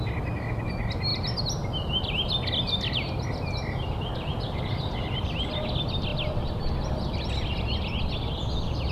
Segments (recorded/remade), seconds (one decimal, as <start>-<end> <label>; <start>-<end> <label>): 0.0-4.1 recorded; 4.1-4.7 remade; 4.7-6.1 recorded; 6.1-6.6 remade; 6.6-8.9 recorded

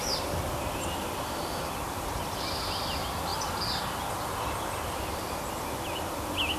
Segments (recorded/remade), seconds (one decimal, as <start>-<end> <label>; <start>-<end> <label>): 0.0-6.6 recorded

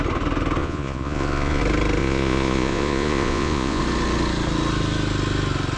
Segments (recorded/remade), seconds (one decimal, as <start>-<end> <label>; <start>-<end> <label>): 0.0-0.6 recorded; 0.6-1.6 remade; 1.6-2.0 recorded; 2.0-3.8 remade; 3.8-5.8 recorded